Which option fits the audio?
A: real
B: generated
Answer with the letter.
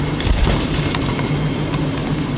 B